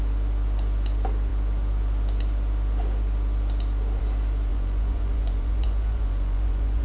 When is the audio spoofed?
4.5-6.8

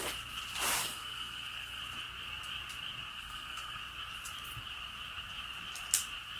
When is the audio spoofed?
0.8-1.8; 3.1-3.8

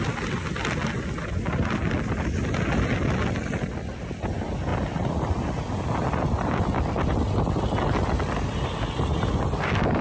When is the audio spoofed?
none

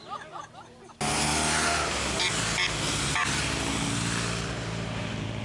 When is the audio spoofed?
none